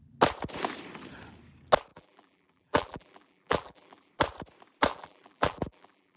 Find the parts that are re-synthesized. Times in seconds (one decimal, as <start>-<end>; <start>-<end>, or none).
1.9-4.1; 4.9-6.2